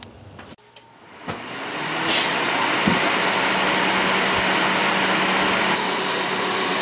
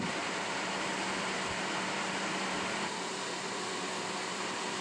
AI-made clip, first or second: second